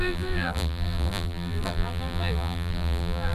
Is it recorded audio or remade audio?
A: remade